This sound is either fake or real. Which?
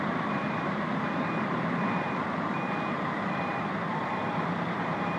fake